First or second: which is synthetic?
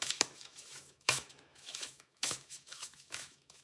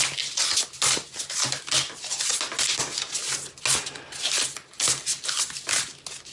first